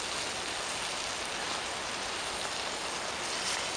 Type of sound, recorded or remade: recorded